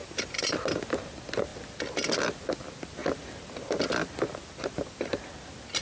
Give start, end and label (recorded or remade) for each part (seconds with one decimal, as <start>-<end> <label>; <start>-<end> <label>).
0.0-0.5 remade; 0.5-5.8 recorded